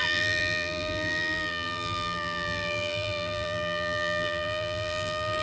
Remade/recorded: remade